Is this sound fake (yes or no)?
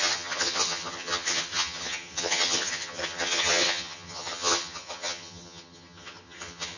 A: yes